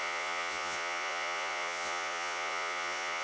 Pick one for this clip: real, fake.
fake